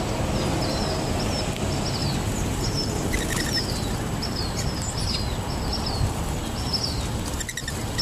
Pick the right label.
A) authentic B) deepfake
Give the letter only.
A